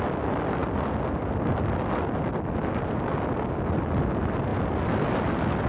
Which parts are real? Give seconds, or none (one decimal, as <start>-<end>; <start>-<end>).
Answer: 0.0-5.7